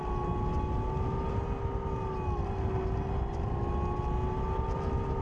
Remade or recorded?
recorded